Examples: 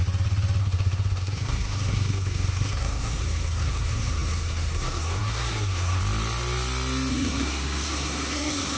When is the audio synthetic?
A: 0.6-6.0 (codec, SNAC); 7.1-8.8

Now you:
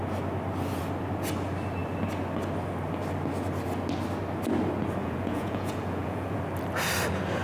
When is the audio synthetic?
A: 5.0-6.4 (vocoder, Vocos)

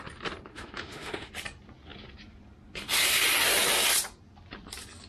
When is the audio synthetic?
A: 0.5-1.3 (autoencoder, DAC-VAE)

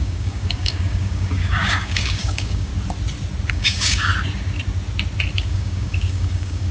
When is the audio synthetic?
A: 0.0-2.7 (codec, DAC); 3.5-4.1; 5.4-6.7

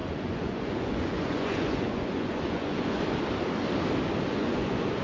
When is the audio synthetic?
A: 0.0-3.0 (vocoder, Vocos); 4.4-5.0